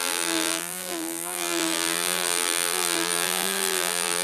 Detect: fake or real fake